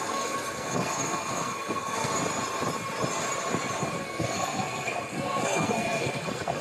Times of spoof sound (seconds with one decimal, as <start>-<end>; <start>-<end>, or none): 0.0-2.1; 4.0-6.6